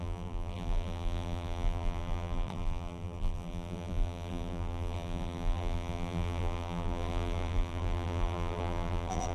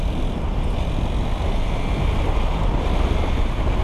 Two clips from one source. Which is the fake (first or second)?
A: first